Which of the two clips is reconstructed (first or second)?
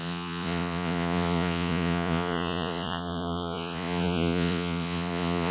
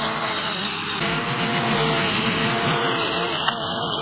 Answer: first